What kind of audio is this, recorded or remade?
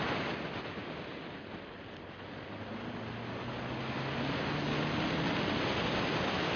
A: recorded